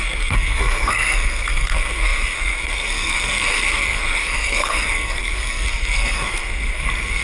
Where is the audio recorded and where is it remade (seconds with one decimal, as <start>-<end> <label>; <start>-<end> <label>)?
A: 0.0-7.2 remade